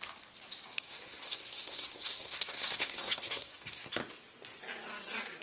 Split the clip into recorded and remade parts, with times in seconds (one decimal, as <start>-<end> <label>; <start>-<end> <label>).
0.0-0.7 recorded; 0.7-3.9 remade; 3.9-5.4 recorded